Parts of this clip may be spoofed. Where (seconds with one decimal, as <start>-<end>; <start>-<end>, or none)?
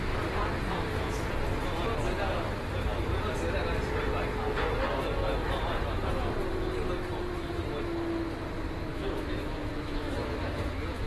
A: 8.9-11.1